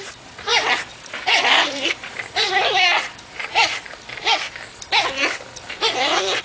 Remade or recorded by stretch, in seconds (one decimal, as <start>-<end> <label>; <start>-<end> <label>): 0.0-0.5 recorded; 0.5-3.9 remade; 3.9-6.4 recorded